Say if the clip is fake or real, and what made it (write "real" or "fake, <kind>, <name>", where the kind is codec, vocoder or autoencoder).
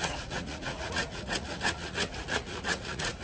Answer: fake, vocoder, Vocos